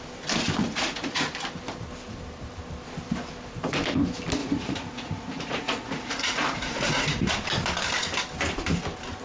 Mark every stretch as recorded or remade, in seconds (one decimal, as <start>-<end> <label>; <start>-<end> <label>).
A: 0.0-0.6 recorded; 0.6-1.3 remade; 1.3-4.4 recorded; 4.4-7.3 remade; 7.3-9.2 recorded